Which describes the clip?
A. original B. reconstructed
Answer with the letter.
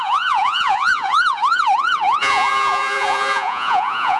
B